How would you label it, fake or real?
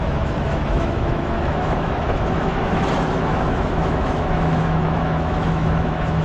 fake